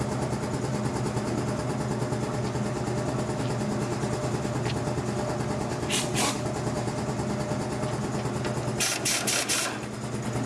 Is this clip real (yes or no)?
yes